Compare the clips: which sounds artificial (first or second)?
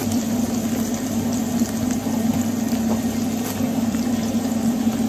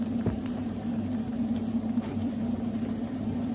second